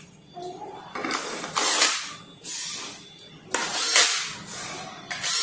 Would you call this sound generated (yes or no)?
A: no